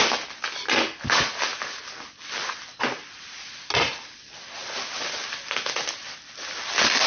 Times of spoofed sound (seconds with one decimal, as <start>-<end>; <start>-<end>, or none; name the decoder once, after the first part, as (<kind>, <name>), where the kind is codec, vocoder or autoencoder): none